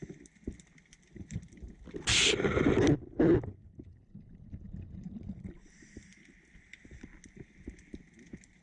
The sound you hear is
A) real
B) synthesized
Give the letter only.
A